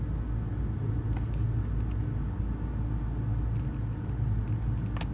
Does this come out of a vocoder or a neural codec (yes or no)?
no